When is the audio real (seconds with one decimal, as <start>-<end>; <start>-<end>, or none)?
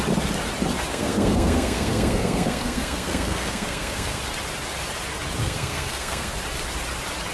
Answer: 0.0-0.9; 4.2-5.4; 6.4-7.3